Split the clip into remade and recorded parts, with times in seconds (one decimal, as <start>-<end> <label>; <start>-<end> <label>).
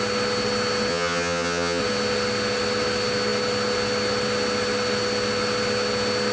0.0-0.9 recorded; 0.9-1.8 remade; 1.8-6.3 recorded